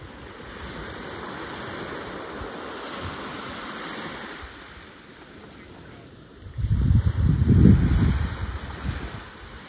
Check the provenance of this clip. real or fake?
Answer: real